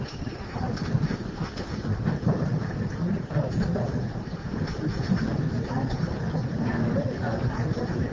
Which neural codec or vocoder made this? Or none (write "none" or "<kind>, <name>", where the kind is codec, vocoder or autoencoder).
none